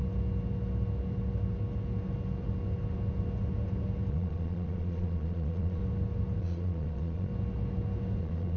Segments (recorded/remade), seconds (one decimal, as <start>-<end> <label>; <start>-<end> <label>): 0.0-4.1 recorded; 4.1-5.8 remade; 5.8-6.4 recorded; 6.4-7.3 remade; 7.3-8.2 recorded; 8.2-8.6 remade